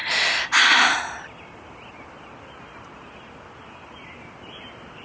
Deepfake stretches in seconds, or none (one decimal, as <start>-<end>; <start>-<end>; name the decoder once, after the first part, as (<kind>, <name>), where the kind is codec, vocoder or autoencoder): none